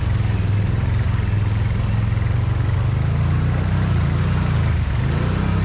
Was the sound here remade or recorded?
recorded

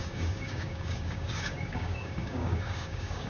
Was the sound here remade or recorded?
remade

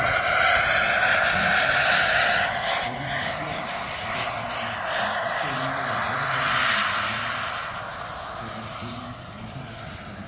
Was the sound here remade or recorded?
recorded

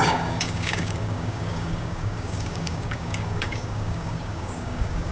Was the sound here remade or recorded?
remade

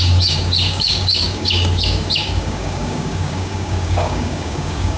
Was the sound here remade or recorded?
remade